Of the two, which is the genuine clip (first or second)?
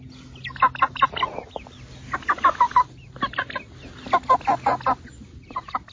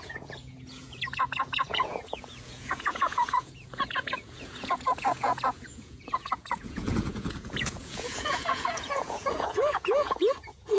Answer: first